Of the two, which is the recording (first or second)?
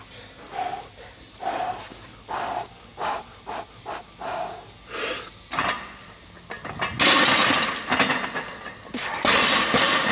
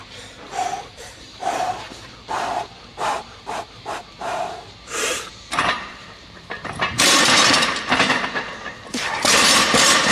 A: first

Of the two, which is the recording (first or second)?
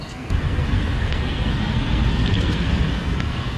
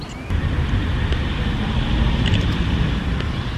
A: second